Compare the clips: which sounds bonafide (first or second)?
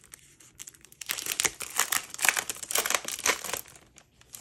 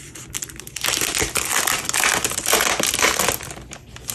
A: second